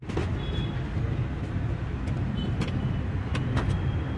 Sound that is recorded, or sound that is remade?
recorded